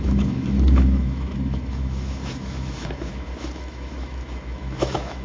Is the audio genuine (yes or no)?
no